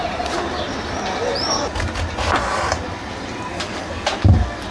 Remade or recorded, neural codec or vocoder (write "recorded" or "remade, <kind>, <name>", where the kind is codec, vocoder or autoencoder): recorded